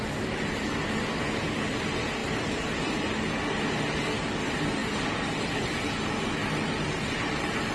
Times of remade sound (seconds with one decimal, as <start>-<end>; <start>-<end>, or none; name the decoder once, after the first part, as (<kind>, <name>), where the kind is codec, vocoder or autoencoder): 2.2-2.9 (vocoder, BigVGAN v2); 4.8-5.9; 6.4-7.7